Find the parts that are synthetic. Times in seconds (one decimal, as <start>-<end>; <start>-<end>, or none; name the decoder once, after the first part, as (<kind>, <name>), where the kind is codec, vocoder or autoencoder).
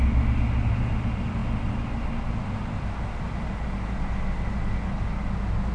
none